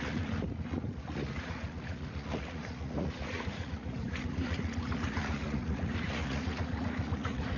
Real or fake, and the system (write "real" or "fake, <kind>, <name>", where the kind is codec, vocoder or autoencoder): fake, vocoder, Vocos